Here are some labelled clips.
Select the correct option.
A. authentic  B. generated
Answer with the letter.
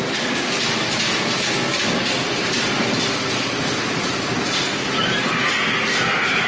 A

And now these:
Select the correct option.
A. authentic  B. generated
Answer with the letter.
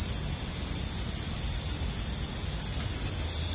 A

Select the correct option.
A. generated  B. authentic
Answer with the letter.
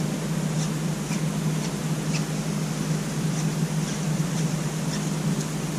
B